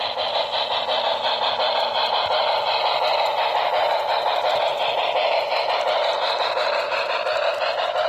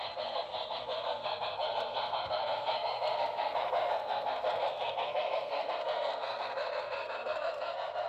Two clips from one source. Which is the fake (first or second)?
second